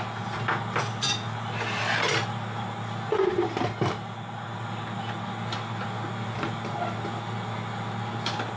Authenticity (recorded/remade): recorded